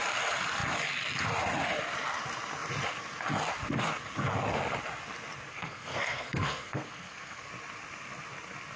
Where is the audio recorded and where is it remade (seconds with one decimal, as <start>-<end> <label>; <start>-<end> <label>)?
0.0-5.5 recorded; 5.5-7.5 remade; 7.5-8.8 recorded